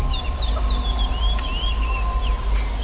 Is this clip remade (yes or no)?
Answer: no